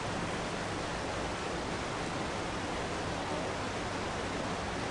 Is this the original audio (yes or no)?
yes